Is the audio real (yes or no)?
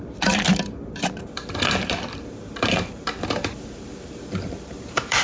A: no